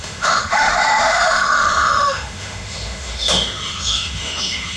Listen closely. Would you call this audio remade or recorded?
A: remade